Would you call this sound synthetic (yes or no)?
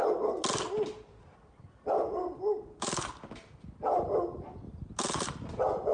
no